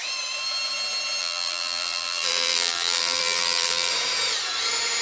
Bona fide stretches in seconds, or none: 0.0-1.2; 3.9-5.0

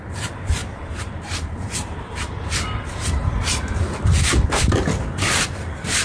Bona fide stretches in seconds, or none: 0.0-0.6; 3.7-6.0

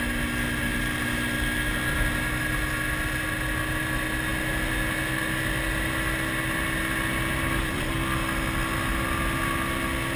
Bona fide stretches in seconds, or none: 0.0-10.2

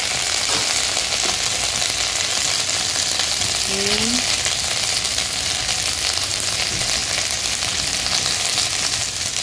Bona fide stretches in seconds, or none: 0.0-9.4

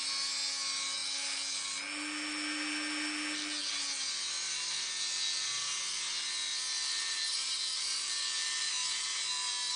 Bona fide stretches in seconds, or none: 0.0-6.8; 8.7-9.8

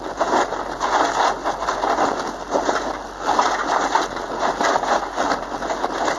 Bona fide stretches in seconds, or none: 0.0-6.2

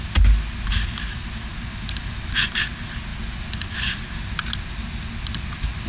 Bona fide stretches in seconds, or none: 0.0-2.0; 2.6-5.9

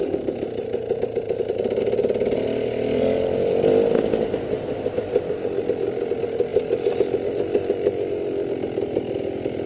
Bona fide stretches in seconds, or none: 0.0-9.7